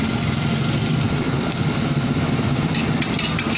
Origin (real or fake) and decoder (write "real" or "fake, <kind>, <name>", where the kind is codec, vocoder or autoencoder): real